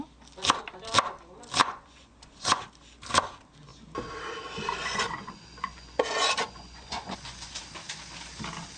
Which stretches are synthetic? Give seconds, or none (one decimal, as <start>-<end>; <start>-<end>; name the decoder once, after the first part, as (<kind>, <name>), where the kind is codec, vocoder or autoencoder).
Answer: 1.6-2.6 (vocoder, Vocos); 4.8-7.6